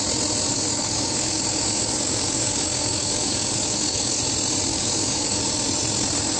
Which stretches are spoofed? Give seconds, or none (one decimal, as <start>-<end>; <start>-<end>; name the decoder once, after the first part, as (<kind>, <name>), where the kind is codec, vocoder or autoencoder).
0.5-4.2 (codec, DAC); 4.7-5.5

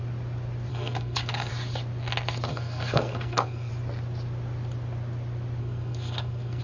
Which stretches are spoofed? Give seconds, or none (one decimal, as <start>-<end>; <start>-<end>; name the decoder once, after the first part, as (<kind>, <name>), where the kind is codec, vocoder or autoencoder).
0.7-1.5 (codec, SNAC); 2.5-3.7; 5.6-6.6

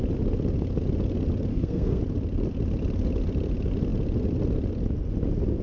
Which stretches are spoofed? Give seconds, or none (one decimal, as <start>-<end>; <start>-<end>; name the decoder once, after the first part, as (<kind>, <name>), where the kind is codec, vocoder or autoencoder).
1.5-2.0 (codec, SNAC)

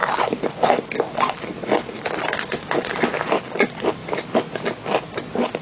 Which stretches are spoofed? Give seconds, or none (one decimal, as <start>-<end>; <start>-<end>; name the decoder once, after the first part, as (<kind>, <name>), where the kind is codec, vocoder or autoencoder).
none